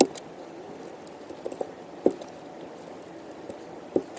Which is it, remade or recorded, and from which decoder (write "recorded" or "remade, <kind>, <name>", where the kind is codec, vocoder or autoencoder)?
recorded